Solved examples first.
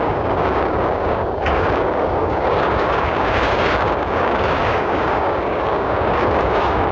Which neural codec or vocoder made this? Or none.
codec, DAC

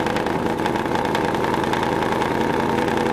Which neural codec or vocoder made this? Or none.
none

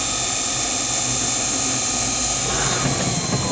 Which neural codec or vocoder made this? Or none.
none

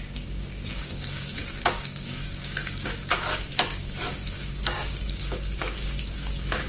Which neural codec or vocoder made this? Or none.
codec, DAC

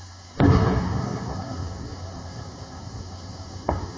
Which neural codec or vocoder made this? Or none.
codec, SNAC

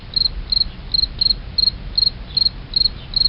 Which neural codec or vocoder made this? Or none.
none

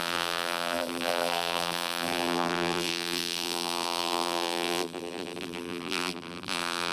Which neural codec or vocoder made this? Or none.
vocoder, BigVGAN v2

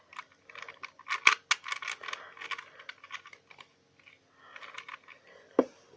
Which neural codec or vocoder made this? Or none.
none